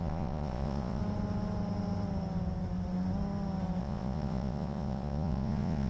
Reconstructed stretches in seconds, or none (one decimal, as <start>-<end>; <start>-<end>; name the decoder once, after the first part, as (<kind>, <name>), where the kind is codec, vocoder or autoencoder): 0.0-1.0 (vocoder, Vocos); 3.8-5.9